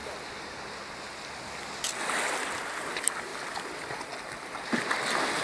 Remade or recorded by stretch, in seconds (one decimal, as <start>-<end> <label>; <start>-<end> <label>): 0.0-5.4 recorded